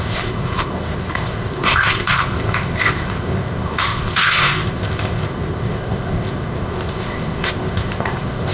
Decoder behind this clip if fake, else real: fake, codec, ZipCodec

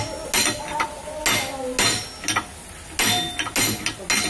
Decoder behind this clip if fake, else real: real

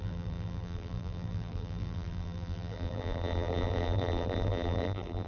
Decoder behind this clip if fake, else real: fake, vocoder, BigVGAN v2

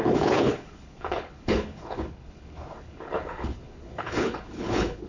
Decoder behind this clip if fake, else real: fake, codec, HILCodec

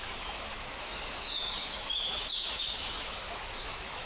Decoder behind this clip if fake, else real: fake, autoencoder, DAC-VAE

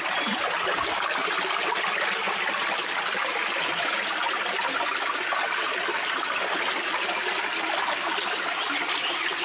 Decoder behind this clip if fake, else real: real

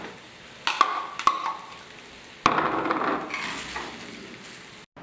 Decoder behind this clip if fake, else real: real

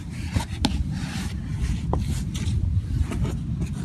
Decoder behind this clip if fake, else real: real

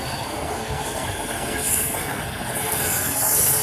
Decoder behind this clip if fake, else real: fake, codec, SNAC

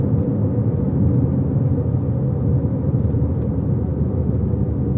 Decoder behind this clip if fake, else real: real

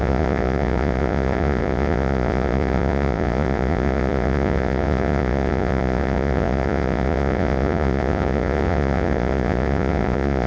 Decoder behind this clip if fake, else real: fake, vocoder, Vocos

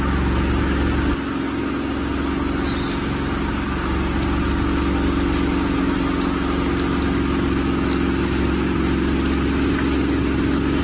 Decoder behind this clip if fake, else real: real